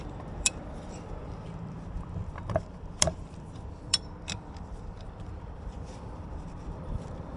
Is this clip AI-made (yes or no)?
yes